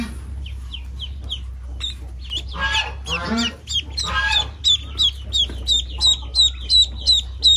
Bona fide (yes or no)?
yes